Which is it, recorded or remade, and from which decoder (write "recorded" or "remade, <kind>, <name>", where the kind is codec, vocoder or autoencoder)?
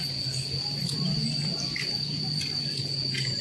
recorded